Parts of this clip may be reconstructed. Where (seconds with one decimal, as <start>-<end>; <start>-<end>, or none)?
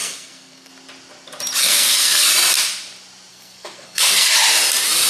0.0-0.7; 1.6-2.3; 3.3-4.3